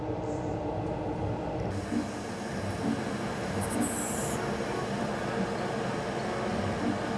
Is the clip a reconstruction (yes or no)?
no